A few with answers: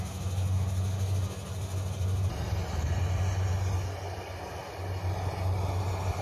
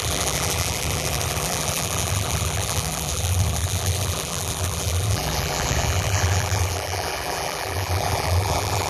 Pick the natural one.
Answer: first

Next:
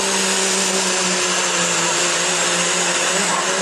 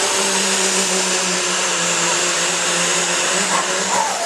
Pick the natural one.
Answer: first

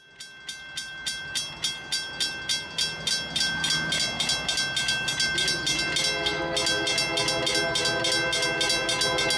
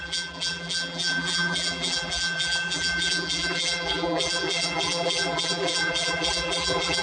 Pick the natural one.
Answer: first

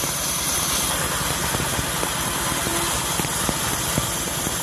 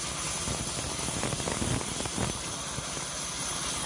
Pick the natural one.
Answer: second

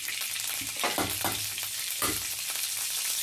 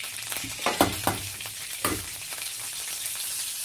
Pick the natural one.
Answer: first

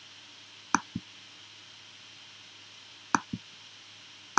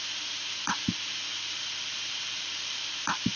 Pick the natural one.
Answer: first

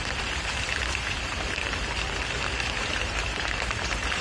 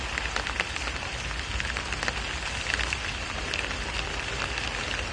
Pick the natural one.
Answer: second